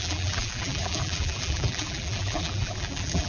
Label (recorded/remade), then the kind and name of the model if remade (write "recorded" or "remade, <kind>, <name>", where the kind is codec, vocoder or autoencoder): remade, vocoder, BigVGAN v2